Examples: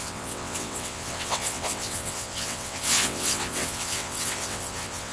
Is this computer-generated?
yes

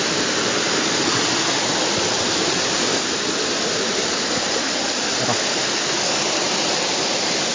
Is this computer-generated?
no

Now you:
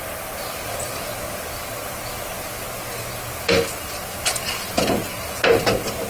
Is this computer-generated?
no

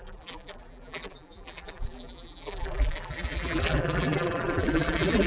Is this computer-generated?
yes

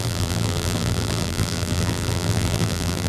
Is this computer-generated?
yes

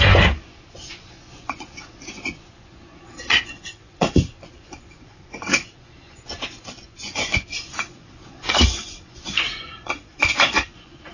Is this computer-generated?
yes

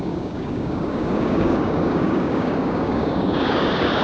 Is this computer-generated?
yes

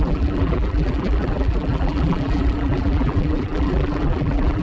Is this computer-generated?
yes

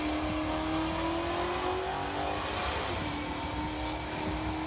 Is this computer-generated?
no